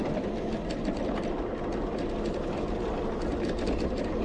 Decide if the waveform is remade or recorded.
recorded